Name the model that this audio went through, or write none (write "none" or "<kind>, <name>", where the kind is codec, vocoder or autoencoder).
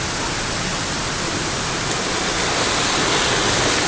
none